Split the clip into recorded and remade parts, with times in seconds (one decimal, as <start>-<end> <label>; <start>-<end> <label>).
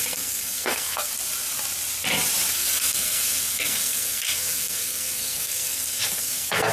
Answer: 0.0-1.1 remade; 1.1-2.5 recorded; 2.5-6.7 remade